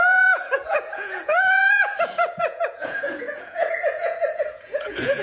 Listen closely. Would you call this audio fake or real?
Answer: fake